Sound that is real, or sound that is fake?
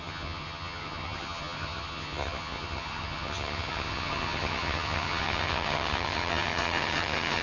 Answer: fake